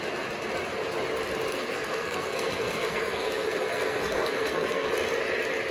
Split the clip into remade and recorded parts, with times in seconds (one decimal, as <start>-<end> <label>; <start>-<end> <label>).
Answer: 0.0-1.5 recorded; 1.5-4.9 remade; 4.9-5.7 recorded